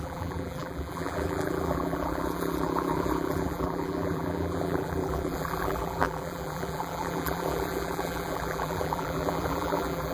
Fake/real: fake